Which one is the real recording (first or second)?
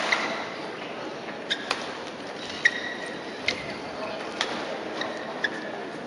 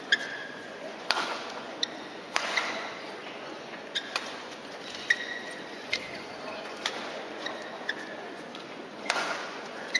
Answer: first